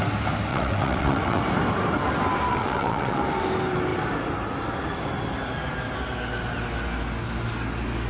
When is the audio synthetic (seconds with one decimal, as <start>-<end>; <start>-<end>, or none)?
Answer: 0.5-1.4; 2.5-3.2